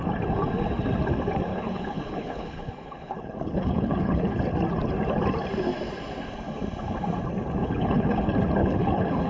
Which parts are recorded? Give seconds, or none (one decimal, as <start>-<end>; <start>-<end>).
0.0-1.5; 4.4-7.6; 8.2-8.6

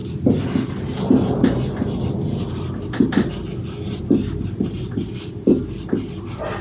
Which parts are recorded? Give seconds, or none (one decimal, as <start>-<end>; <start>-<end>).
0.0-6.6